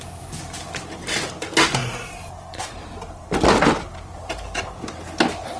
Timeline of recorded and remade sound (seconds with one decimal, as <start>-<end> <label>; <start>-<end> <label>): 0.0-5.6 recorded